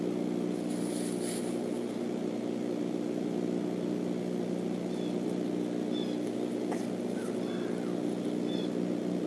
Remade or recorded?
recorded